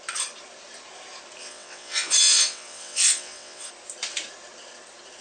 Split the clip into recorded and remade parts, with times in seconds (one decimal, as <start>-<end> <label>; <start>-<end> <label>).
0.0-1.4 recorded; 1.4-3.7 remade; 3.7-5.2 recorded